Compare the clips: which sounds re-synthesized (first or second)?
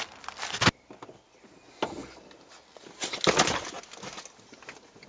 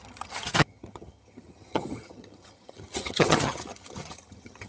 second